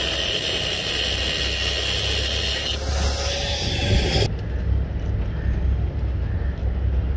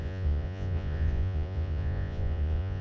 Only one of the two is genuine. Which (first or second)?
first